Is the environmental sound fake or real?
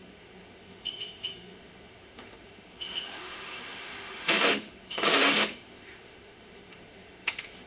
fake